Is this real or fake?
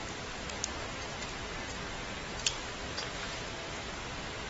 fake